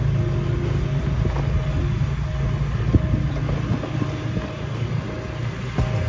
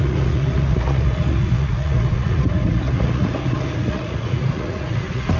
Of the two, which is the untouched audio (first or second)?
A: first